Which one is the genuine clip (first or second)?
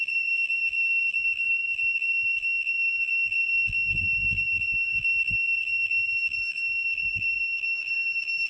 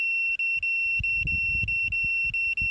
second